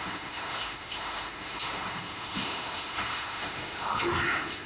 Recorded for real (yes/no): no